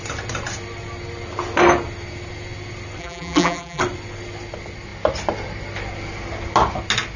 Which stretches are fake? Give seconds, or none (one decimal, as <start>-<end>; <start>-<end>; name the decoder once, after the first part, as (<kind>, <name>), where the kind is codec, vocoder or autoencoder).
3.0-3.8 (vocoder, BigVGAN v2)